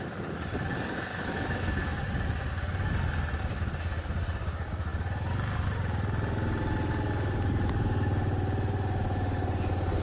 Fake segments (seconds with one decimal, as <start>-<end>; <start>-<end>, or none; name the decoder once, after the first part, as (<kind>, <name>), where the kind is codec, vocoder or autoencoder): 1.1-2.0 (autoencoder, DAC-VAE)